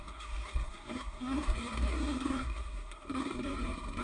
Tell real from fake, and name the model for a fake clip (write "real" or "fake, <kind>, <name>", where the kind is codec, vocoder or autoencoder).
fake, codec, SNAC